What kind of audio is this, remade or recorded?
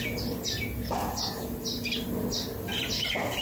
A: recorded